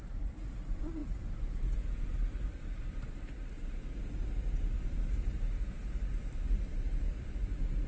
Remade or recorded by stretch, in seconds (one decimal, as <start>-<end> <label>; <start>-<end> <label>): 0.0-7.9 remade